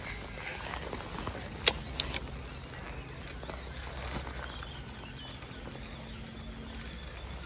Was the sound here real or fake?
real